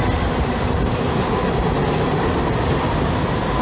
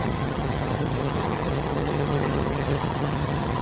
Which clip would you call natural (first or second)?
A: first